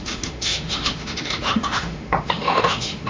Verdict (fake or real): fake